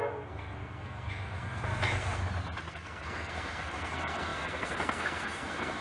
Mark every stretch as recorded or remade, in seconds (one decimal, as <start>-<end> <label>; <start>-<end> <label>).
0.0-2.2 remade; 2.2-2.7 recorded; 2.7-5.8 remade